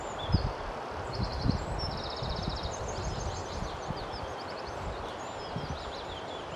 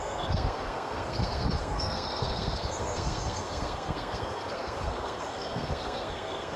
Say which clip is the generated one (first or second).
second